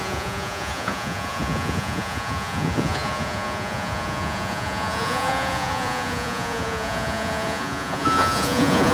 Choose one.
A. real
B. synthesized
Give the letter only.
B